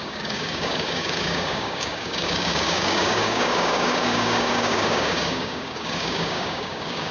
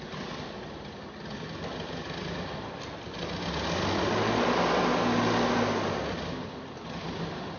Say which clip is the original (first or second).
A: second